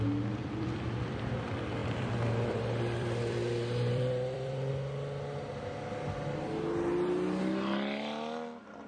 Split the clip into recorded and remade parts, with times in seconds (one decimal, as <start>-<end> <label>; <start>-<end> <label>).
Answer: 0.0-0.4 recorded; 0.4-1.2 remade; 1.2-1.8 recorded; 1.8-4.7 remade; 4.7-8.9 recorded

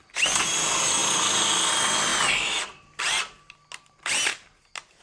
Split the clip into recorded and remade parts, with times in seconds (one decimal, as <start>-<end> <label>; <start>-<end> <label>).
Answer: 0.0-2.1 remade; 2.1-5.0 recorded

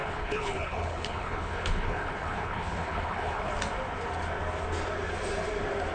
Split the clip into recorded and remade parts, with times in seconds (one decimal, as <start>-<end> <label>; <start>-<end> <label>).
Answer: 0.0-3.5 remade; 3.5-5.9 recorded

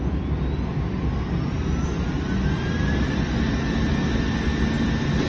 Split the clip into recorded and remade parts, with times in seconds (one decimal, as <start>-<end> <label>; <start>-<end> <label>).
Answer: 0.0-5.3 recorded

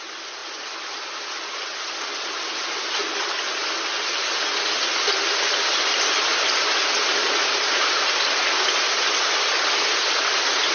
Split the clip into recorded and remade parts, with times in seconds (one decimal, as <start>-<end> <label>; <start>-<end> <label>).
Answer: 0.0-10.7 recorded